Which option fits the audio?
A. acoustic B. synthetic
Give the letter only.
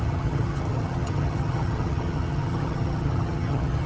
B